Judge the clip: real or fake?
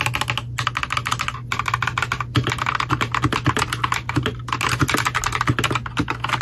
real